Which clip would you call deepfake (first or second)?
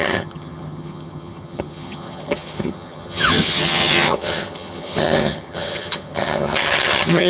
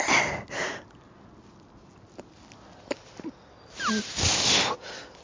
first